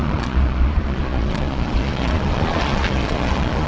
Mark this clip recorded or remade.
remade